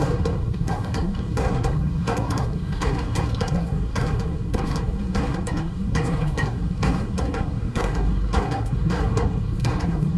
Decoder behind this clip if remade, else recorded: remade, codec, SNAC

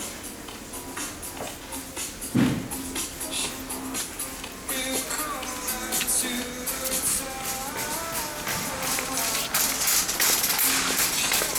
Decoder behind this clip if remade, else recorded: recorded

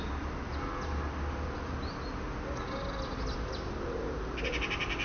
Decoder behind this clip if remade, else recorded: recorded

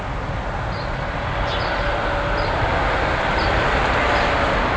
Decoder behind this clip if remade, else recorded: recorded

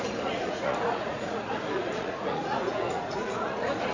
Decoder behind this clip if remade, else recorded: remade, vocoder, Vocos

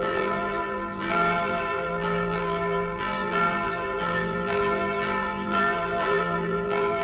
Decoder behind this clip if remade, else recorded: remade, vocoder, BigVGAN v2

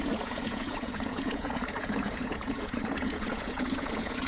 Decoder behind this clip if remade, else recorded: remade, vocoder, Vocos